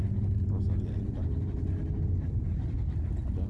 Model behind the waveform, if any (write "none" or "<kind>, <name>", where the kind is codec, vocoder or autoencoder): none